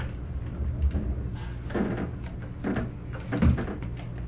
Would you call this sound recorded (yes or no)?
yes